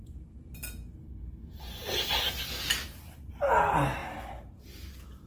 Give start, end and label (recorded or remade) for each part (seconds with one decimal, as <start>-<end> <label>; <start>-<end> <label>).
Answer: 0.0-1.0 recorded; 1.0-1.6 remade; 1.6-5.3 recorded